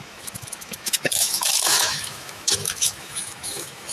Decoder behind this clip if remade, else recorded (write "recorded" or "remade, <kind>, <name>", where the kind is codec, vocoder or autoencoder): remade, autoencoder, DAC-VAE